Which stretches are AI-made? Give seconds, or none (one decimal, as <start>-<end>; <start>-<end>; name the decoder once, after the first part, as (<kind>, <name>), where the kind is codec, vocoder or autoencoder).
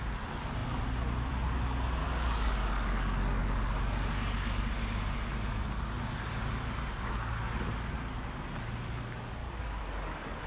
2.0-4.6 (codec, DAC); 9.4-10.5